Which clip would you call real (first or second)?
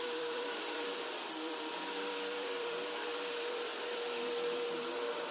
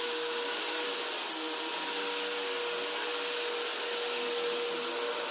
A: second